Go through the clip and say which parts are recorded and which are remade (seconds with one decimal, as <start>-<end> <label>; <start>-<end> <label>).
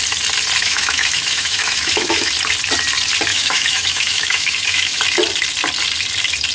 0.0-0.6 recorded; 0.6-2.3 remade; 2.3-3.3 recorded; 3.3-5.0 remade; 5.0-6.5 recorded